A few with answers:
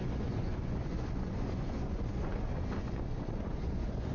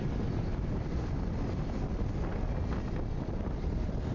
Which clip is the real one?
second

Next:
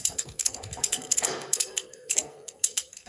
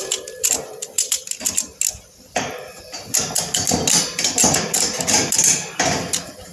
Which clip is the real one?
second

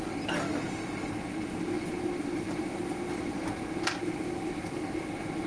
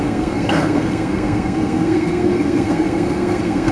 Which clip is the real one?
first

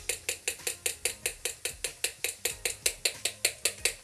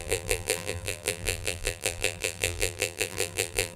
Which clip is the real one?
first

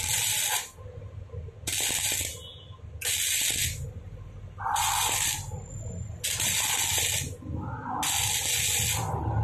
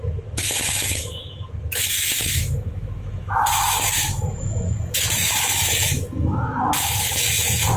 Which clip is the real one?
first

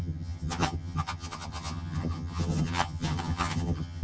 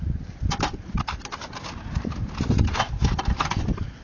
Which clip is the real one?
second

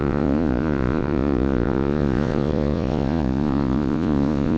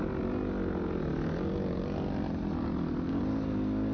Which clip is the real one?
second